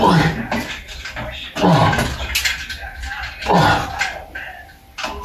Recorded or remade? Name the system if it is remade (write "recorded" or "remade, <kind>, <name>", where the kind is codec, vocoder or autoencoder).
recorded